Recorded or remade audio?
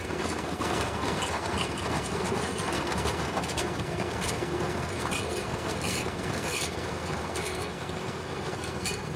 remade